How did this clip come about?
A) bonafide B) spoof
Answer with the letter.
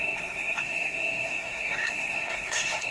B